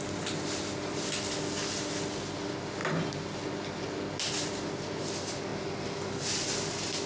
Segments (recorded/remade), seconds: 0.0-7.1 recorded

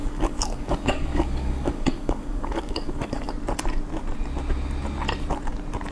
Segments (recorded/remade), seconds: 0.0-3.3 remade; 3.3-5.9 recorded

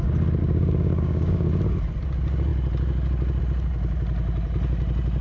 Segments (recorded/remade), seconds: 0.0-0.4 recorded; 0.4-1.5 remade; 1.5-5.2 recorded